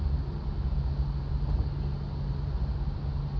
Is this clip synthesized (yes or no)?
no